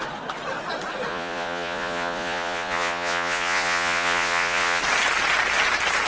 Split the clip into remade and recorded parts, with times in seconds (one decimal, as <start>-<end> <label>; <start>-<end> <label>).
0.0-1.1 recorded; 1.1-4.8 remade; 4.8-6.1 recorded